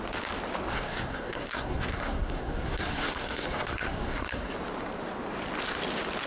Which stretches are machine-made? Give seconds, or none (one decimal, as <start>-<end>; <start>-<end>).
0.7-4.5